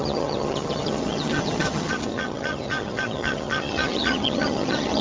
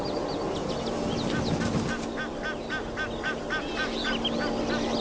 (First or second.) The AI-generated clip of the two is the first